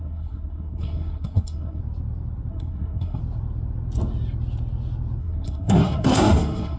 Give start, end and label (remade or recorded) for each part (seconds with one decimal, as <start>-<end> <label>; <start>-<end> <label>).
0.0-1.8 remade; 1.8-2.5 recorded; 2.5-3.2 remade; 3.2-5.2 recorded; 5.2-6.8 remade